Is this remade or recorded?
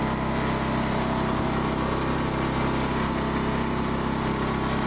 recorded